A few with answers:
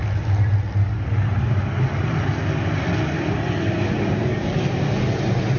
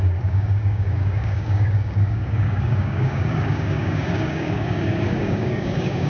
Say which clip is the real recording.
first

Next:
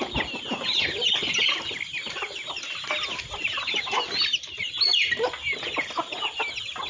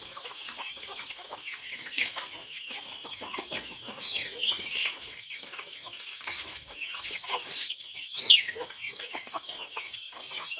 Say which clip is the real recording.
first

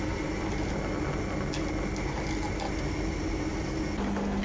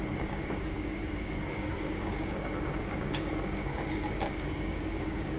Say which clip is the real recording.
first